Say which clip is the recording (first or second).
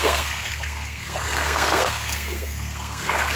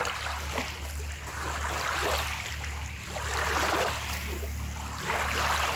second